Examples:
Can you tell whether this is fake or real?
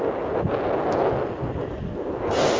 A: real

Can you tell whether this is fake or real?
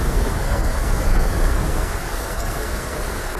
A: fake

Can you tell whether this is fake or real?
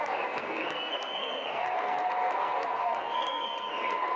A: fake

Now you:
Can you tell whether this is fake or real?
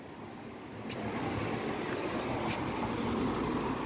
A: real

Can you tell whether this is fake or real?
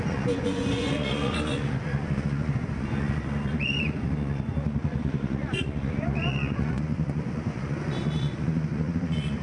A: fake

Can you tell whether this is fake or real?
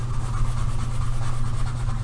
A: real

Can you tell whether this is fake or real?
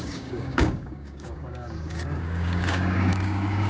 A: fake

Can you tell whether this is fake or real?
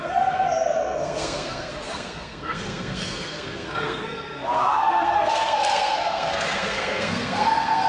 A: fake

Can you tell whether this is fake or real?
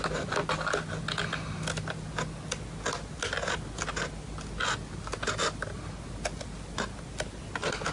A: real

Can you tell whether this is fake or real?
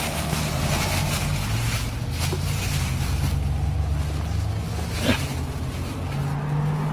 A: real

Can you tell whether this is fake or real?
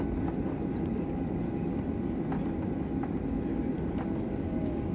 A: real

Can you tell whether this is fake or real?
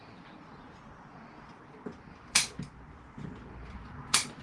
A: real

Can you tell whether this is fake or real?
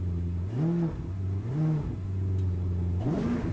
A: real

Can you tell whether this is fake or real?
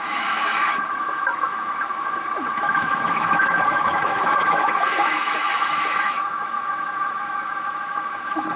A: fake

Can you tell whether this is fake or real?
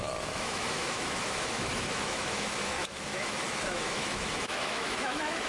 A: fake